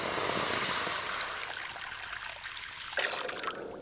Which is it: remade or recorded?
recorded